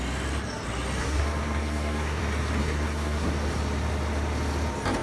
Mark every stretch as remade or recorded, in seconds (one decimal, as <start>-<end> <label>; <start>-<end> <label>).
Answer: 0.0-1.0 recorded; 1.0-2.2 remade; 2.2-2.6 recorded; 2.6-3.3 remade; 3.3-5.0 recorded